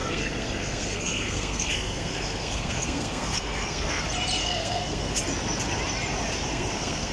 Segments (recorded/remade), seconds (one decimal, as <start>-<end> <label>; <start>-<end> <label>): 0.0-4.0 remade; 4.0-4.4 recorded; 4.4-5.1 remade; 5.1-6.5 recorded; 6.5-7.1 remade